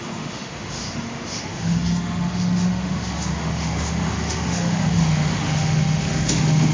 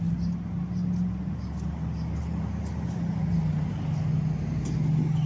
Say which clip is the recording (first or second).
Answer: second